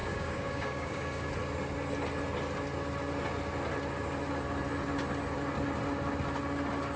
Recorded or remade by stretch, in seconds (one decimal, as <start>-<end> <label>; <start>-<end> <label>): 0.0-1.3 remade; 1.3-7.0 recorded

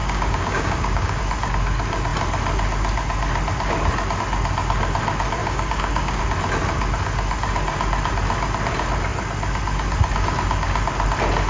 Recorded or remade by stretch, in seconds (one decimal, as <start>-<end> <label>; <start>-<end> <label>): 0.0-1.2 remade; 1.2-5.4 recorded; 5.4-6.2 remade; 6.2-11.5 recorded

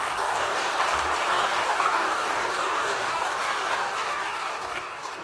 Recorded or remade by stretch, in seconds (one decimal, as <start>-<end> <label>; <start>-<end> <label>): 0.0-0.7 remade; 0.7-1.3 recorded; 1.3-5.2 remade

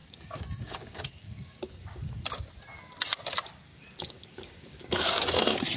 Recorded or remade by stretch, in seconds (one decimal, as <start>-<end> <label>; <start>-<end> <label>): 0.0-2.2 remade; 2.2-3.7 recorded; 3.7-5.2 remade; 5.2-5.8 recorded

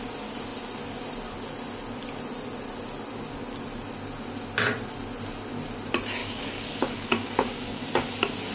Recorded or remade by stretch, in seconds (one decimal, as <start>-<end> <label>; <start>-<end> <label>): 0.0-6.2 recorded; 6.2-8.1 remade; 8.1-8.5 recorded

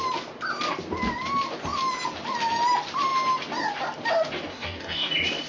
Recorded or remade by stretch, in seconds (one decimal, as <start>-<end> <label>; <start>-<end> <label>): 0.0-4.5 recorded; 4.5-5.1 remade; 5.1-5.5 recorded

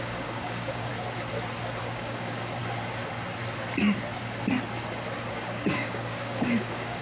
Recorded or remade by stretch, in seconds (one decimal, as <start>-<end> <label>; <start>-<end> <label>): 0.0-0.9 remade; 0.9-1.8 recorded; 1.8-2.6 remade; 2.6-5.3 recorded; 5.3-7.0 remade